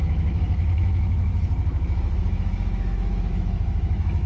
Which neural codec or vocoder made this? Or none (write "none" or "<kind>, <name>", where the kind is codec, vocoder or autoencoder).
autoencoder, DAC-VAE